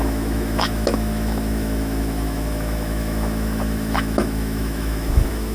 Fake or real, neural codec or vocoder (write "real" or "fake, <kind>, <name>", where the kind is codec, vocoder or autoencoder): fake, autoencoder, DAC-VAE